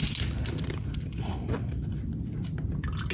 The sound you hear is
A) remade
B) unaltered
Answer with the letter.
B